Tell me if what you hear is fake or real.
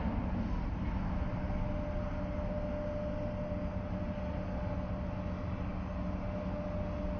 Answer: real